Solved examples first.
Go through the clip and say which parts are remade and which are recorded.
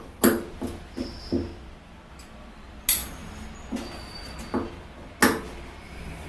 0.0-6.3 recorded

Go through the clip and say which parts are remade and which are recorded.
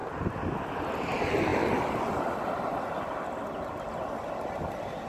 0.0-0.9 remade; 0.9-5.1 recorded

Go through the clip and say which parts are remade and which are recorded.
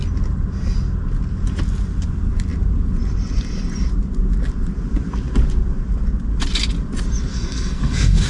0.0-7.3 recorded; 7.3-8.3 remade